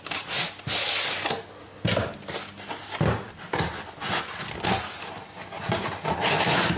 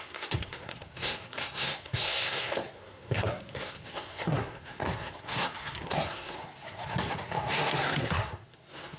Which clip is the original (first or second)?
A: first